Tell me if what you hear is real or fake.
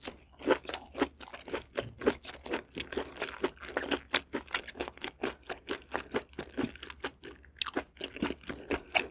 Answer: real